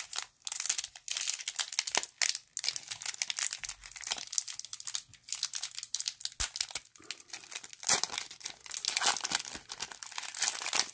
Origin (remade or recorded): recorded